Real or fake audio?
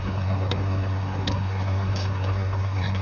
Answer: fake